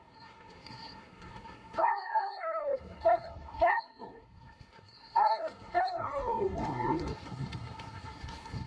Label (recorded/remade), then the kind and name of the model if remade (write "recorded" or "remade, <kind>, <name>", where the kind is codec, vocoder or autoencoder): remade, codec, SNAC